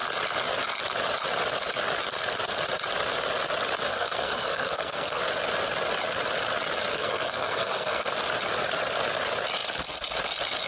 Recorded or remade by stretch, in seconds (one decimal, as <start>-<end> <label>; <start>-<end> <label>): 0.0-3.9 recorded; 3.9-5.2 remade; 5.2-6.9 recorded; 6.9-8.1 remade; 8.1-10.7 recorded